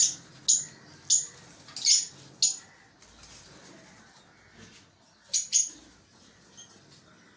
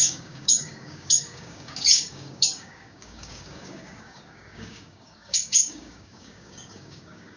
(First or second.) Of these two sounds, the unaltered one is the first